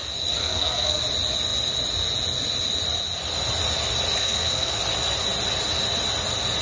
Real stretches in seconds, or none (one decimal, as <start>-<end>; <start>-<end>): 0.0-0.4; 1.0-4.2; 4.8-6.6